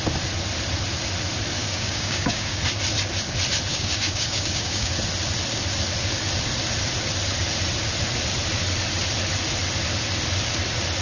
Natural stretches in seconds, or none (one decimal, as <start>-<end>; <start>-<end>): 0.0-1.6; 2.6-3.7; 4.9-11.0